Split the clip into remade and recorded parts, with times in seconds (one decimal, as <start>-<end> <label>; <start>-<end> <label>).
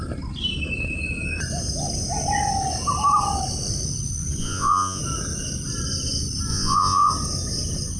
0.0-4.4 recorded; 4.4-5.0 remade; 5.0-6.5 recorded; 6.5-7.1 remade; 7.1-8.0 recorded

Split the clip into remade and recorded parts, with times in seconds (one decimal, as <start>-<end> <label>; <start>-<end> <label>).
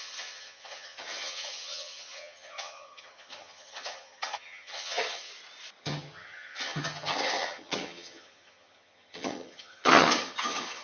0.0-5.3 remade; 5.3-5.8 recorded; 5.8-10.8 remade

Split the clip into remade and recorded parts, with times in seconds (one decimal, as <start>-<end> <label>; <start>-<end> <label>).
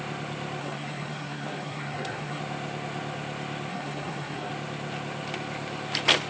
0.0-0.6 recorded; 0.6-2.4 remade; 2.4-3.7 recorded; 3.7-4.5 remade; 4.5-6.3 recorded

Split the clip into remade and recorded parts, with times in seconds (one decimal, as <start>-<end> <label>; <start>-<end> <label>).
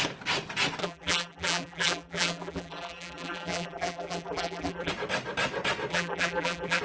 0.0-0.8 recorded; 0.8-4.9 remade; 4.9-5.9 recorded; 5.9-6.8 remade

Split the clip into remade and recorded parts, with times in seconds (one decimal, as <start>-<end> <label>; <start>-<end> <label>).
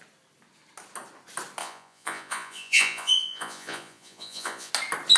0.0-1.6 recorded; 1.6-4.7 remade; 4.7-5.2 recorded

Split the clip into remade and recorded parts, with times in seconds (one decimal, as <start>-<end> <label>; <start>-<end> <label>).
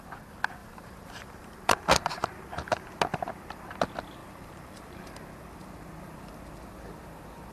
0.0-0.6 recorded; 0.6-3.0 remade; 3.0-4.2 recorded; 4.2-5.1 remade; 5.1-7.5 recorded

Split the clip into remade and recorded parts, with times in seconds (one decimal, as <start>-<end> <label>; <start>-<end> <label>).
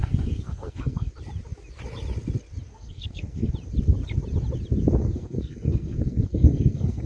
0.0-1.1 remade; 1.1-2.7 recorded; 2.7-3.5 remade; 3.5-5.0 recorded; 5.0-7.1 remade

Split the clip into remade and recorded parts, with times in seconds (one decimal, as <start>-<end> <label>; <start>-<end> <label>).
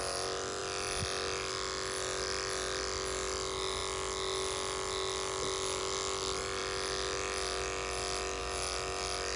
0.0-9.4 recorded